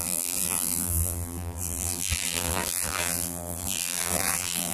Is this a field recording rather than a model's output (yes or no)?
no